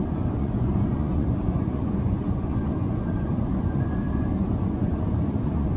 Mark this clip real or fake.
fake